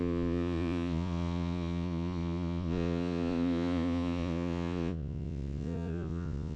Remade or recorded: remade